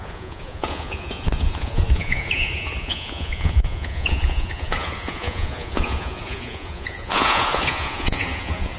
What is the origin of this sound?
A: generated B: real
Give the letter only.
A